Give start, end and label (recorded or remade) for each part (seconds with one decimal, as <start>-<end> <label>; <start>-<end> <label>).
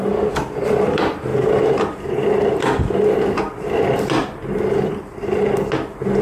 0.0-6.2 recorded